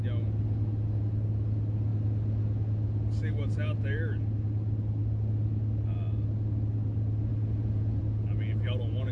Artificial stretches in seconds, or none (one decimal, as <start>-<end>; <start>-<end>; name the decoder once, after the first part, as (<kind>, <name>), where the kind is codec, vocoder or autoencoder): 7.3-8.0 (vocoder, Vocos)